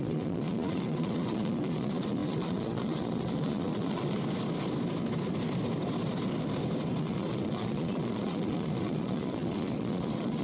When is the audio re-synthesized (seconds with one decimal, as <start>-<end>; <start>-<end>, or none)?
0.0-4.2; 7.0-10.4